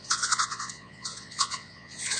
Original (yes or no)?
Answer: no